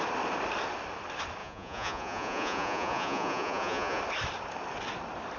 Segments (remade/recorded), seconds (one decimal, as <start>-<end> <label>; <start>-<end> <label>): 0.0-1.4 recorded; 1.4-4.0 remade; 4.0-5.4 recorded